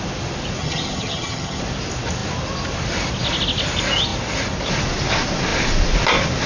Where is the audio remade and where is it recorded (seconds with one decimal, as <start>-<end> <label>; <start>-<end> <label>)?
0.0-0.6 recorded; 0.6-1.6 remade; 1.6-6.5 recorded